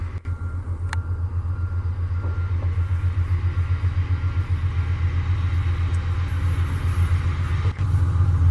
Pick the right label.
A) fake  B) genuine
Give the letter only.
B